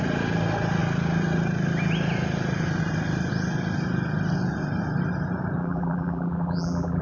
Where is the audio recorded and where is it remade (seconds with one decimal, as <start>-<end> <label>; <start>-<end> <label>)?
0.0-5.6 recorded; 5.6-7.0 remade